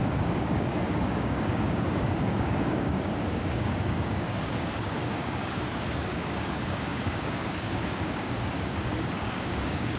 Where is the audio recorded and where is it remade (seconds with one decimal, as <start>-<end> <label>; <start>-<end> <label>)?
0.0-10.0 remade